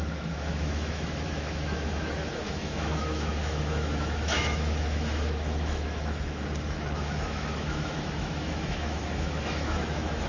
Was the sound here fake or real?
fake